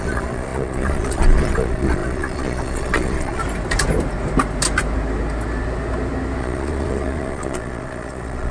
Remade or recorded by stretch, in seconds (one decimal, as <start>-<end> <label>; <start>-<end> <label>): 0.0-3.4 remade; 3.4-6.4 recorded; 6.4-8.5 remade